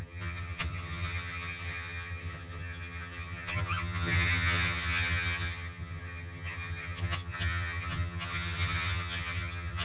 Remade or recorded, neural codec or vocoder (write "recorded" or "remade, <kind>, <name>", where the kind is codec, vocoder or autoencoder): remade, vocoder, HiFi-GAN